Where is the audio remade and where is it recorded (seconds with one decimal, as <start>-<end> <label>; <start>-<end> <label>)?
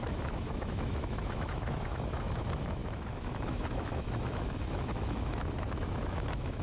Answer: 0.0-6.6 remade